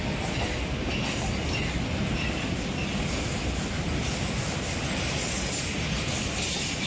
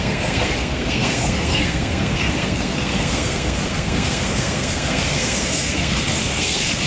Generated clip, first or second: second